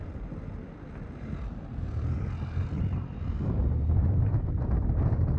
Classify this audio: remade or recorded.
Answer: recorded